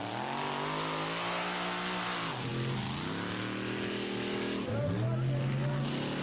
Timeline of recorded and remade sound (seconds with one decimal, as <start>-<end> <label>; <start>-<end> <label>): 0.0-6.2 recorded